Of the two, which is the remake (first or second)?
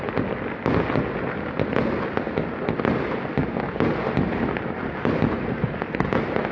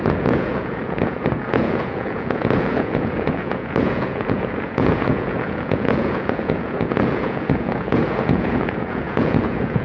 second